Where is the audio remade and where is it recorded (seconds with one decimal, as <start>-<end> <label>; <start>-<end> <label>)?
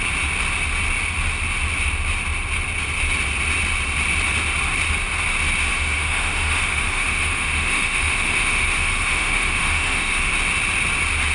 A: 0.0-5.7 recorded; 5.7-10.3 remade; 10.3-11.3 recorded